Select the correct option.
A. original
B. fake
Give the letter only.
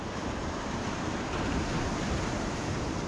B